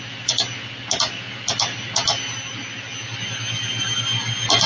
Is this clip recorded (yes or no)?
yes